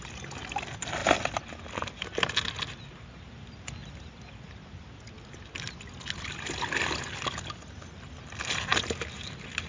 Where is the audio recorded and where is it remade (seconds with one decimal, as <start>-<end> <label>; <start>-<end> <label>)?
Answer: 0.0-9.7 recorded